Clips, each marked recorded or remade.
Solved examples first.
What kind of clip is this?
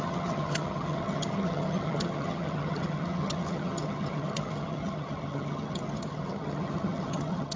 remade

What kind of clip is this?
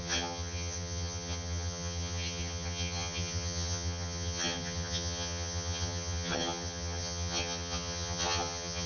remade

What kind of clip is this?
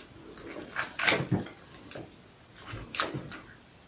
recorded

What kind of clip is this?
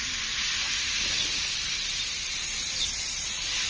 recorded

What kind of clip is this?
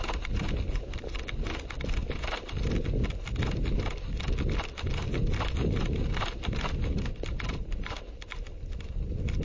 recorded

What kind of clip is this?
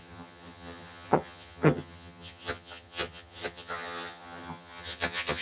remade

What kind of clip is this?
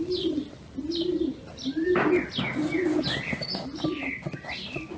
recorded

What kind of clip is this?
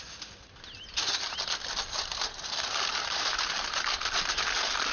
recorded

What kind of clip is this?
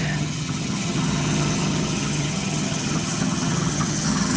remade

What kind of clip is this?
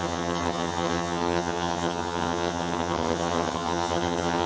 remade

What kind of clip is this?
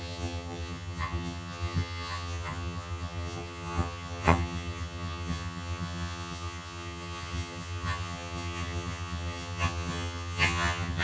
remade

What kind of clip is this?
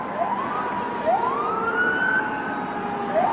recorded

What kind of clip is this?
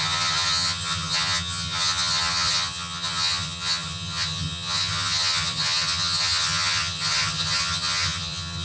remade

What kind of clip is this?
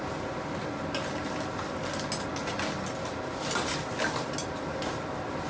recorded